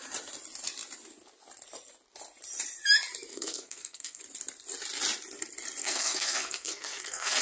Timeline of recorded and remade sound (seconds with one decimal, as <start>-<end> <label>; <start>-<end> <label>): 0.0-3.3 recorded; 3.3-4.2 remade; 4.2-5.8 recorded; 5.8-7.4 remade